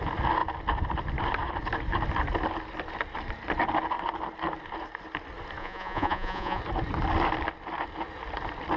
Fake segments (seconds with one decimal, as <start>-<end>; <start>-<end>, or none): 5.6-6.6